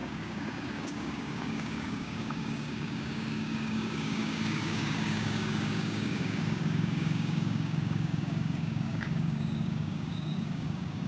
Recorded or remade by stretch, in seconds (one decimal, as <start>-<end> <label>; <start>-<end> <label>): 0.0-11.1 remade